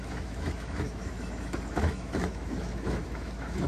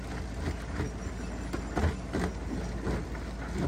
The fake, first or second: first